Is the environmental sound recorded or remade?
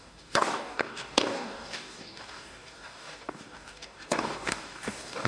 remade